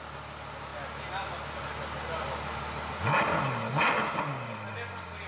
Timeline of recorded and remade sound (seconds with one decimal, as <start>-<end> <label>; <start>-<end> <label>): 0.0-5.3 recorded